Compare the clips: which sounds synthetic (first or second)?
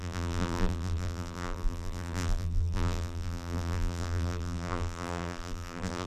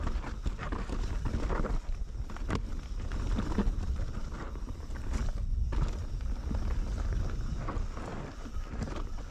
first